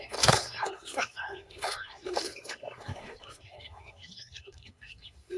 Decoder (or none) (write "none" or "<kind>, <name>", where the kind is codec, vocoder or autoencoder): codec, SNAC